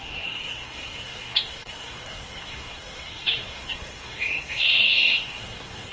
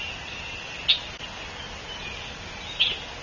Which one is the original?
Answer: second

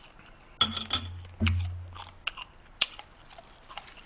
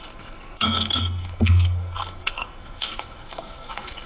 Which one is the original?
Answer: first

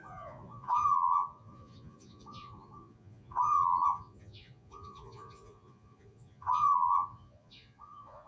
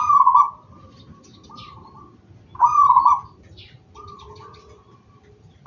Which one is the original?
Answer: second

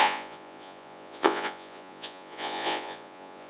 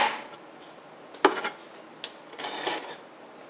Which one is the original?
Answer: second